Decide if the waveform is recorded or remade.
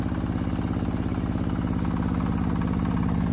recorded